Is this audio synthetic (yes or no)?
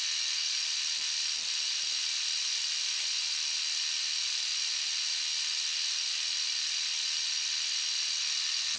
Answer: no